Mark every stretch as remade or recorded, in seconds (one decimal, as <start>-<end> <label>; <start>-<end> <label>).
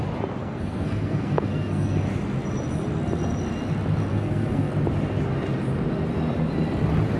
0.0-0.4 recorded; 0.4-2.0 remade; 2.0-4.1 recorded; 4.1-4.7 remade; 4.7-7.2 recorded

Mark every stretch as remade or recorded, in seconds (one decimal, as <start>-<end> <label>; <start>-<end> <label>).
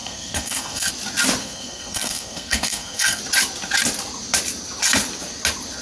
0.0-0.9 remade; 0.9-1.4 recorded; 1.4-3.2 remade; 3.2-5.8 recorded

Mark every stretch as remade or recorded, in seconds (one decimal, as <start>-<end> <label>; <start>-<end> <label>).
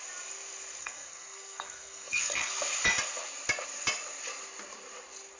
0.0-0.8 recorded; 0.8-2.5 remade; 2.5-5.4 recorded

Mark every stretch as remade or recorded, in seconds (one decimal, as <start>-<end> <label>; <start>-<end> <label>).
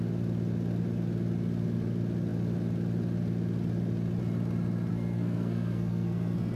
0.0-4.9 recorded; 4.9-6.6 remade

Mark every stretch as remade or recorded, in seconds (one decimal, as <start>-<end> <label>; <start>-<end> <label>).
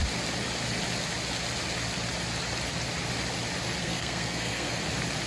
0.0-3.8 recorded; 3.8-4.8 remade; 4.8-5.3 recorded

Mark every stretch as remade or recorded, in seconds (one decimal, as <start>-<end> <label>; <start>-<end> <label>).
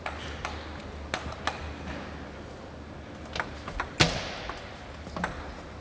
0.0-5.8 recorded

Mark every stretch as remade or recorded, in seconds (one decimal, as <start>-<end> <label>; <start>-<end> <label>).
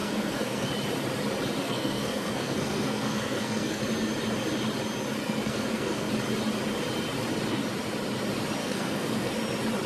0.0-0.7 remade; 0.7-1.6 recorded; 1.6-3.8 remade; 3.8-5.2 recorded; 5.2-6.1 remade; 6.1-8.6 recorded; 8.6-9.3 remade; 9.3-9.9 recorded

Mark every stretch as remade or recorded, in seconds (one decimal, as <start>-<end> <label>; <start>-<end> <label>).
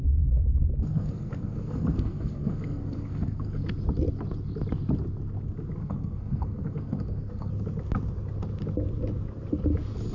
0.0-0.9 recorded; 0.9-3.7 remade; 3.7-5.8 recorded; 5.8-7.5 remade; 7.5-10.1 recorded